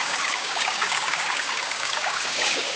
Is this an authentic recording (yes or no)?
no